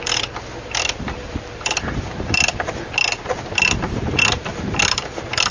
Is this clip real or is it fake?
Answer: real